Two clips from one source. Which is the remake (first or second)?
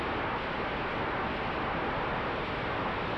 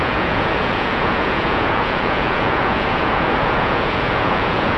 second